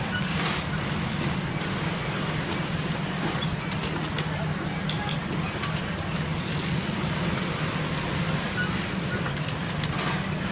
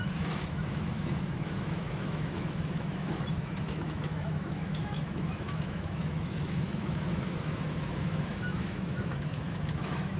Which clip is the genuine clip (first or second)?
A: first